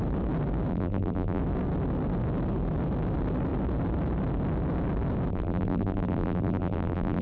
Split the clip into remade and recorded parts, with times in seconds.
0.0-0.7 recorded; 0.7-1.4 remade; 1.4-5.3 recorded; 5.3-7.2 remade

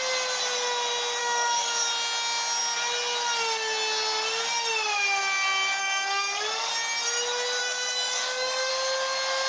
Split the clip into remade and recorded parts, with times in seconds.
0.0-1.2 recorded; 1.2-1.9 remade; 1.9-5.8 recorded; 5.8-6.7 remade; 6.7-7.6 recorded; 7.6-8.7 remade; 8.7-9.5 recorded

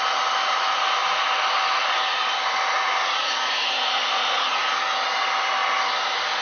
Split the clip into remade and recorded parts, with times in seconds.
0.0-1.0 recorded; 1.0-4.8 remade; 4.8-6.4 recorded